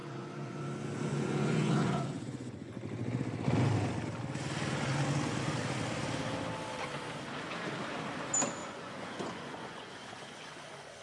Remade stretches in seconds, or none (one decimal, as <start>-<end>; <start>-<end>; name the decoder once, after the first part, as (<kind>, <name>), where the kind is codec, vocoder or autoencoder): 0.0-0.6 (vocoder, Vocos); 1.1-2.7; 8.6-11.0